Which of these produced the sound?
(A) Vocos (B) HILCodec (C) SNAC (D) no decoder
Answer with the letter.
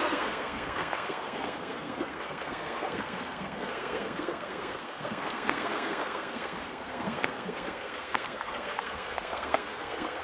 C